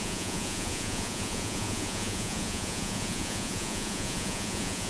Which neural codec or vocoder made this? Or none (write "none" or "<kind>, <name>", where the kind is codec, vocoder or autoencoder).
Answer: vocoder, Vocos